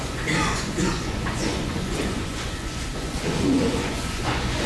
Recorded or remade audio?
remade